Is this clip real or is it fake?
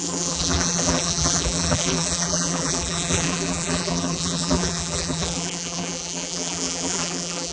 fake